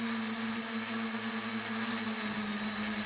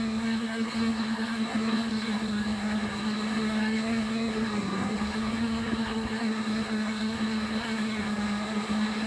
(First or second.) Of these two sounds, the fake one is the second